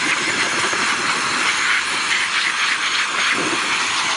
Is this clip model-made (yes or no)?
yes